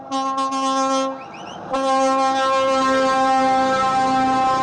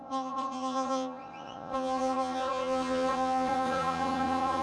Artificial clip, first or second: second